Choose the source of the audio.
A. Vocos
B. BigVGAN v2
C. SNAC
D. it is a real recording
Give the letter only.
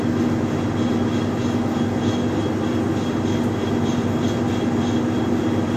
D